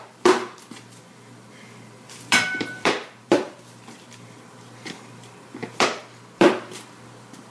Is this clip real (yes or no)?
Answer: no